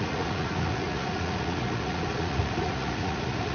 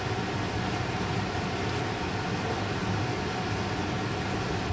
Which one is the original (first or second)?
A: second